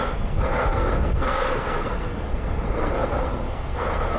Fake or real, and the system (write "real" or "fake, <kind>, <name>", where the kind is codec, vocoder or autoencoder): fake, codec, SNAC